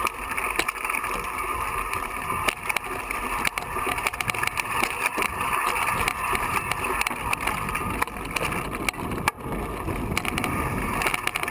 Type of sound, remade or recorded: recorded